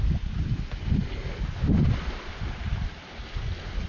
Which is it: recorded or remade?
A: recorded